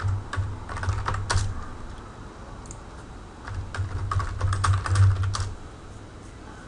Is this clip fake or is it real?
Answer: real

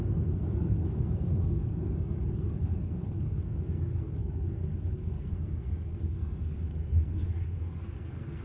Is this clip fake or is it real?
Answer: fake